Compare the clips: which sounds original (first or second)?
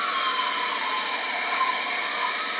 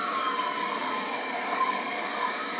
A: first